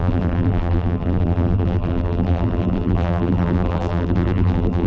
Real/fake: fake